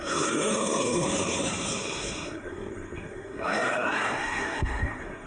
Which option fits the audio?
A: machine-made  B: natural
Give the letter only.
A